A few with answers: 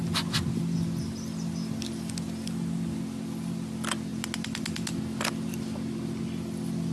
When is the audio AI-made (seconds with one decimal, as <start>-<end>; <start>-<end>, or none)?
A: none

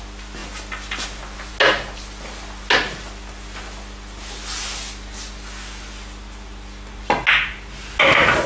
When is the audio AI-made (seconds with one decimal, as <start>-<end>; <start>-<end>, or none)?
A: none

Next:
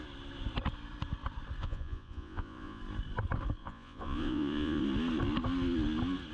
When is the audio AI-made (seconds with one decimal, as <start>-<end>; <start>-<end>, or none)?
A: 1.6-2.8; 3.6-4.8

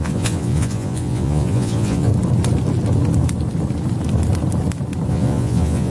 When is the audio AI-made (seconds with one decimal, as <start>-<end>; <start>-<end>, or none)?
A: 0.0-2.1; 5.1-5.9

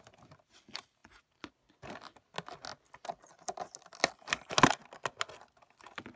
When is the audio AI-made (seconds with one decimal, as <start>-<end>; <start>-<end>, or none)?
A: none

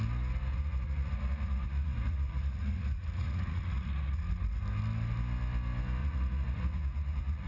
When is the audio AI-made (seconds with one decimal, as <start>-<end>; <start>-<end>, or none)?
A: 0.5-4.2; 6.0-7.5

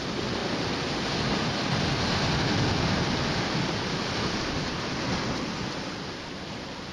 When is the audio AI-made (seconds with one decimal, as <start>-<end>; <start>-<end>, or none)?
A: none

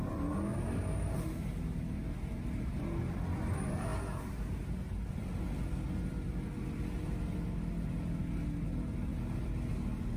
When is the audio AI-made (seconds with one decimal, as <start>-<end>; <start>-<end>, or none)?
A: none